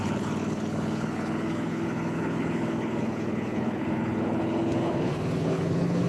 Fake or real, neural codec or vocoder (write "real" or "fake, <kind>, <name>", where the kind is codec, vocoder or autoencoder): fake, codec, HILCodec